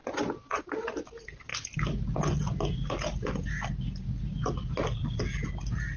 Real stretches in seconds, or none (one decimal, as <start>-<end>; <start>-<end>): 0.0-0.6; 1.5-5.0